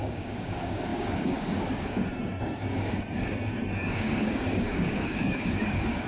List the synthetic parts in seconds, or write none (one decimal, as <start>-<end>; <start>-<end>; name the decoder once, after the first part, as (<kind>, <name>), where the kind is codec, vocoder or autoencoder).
0.0-6.1 (codec, DAC)